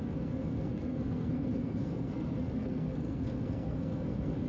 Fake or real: fake